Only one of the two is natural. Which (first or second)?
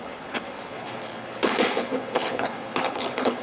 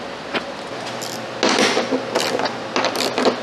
second